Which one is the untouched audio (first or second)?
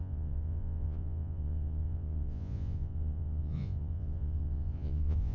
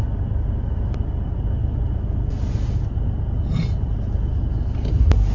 second